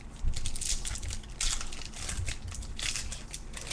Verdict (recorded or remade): recorded